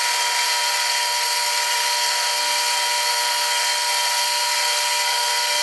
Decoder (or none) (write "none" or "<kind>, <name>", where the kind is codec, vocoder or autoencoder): codec, SNAC